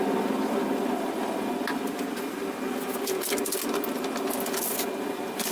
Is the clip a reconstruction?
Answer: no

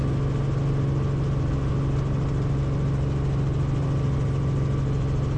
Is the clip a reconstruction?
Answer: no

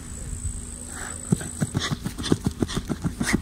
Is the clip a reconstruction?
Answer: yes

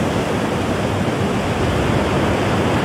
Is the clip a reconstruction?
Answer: no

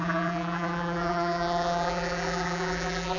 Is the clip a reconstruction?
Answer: yes